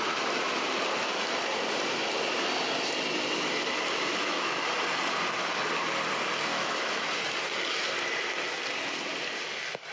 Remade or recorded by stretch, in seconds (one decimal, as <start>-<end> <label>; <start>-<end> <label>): 0.0-4.1 recorded; 4.1-4.7 remade; 4.7-6.5 recorded; 6.5-7.1 remade; 7.1-9.9 recorded